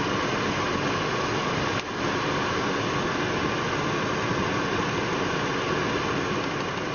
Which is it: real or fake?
real